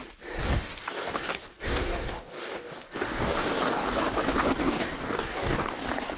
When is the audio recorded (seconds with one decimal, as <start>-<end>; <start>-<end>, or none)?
0.0-0.4; 4.1-4.6; 5.8-6.2